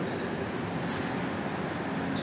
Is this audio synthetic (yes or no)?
no